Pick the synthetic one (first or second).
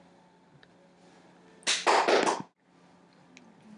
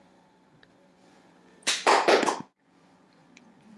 second